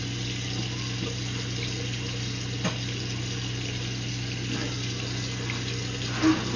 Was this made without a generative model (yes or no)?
yes